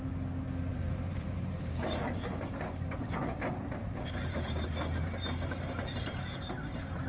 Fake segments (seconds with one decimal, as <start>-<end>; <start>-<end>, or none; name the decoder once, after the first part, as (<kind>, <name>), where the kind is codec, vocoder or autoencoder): 0.7-2.3 (vocoder, BigVGAN v2); 3.8-4.7